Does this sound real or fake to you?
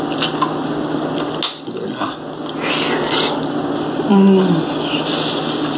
real